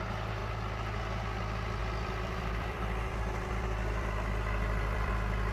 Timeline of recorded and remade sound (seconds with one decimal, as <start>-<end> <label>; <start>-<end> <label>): 0.0-1.8 recorded; 1.8-5.1 remade; 5.1-5.5 recorded